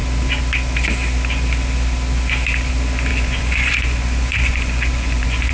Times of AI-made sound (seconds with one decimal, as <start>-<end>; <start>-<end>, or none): 3.1-5.5